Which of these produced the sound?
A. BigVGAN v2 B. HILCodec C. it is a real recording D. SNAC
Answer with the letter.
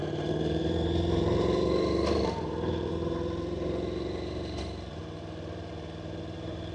A